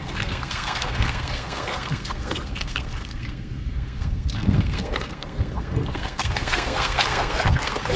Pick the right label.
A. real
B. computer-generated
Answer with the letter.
B